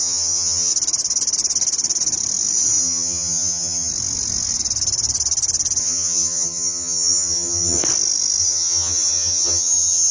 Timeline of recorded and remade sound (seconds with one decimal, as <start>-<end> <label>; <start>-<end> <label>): 0.0-0.7 remade; 0.7-2.8 recorded; 2.8-3.9 remade; 3.9-5.8 recorded; 5.8-7.8 remade; 7.8-8.4 recorded; 8.4-10.1 remade